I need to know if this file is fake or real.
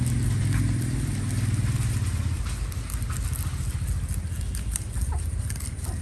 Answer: real